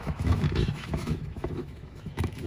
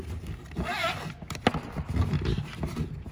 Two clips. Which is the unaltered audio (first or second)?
second